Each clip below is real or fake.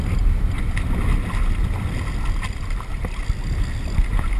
real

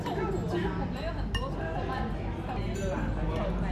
real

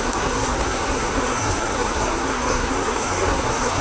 fake